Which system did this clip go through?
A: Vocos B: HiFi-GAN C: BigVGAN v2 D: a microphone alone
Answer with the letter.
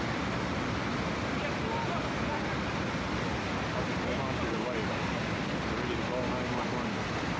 D